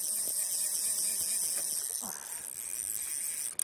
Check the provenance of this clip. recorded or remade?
recorded